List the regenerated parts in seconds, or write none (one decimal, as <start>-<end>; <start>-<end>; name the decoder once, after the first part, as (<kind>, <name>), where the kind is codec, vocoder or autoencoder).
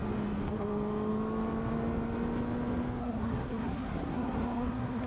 3.0-5.1 (codec, SNAC)